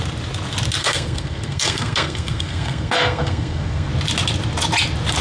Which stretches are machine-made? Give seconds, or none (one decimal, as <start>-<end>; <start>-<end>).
0.8-3.9